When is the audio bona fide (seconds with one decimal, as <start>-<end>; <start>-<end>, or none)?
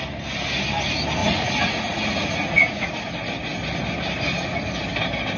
0.0-1.2; 2.9-5.4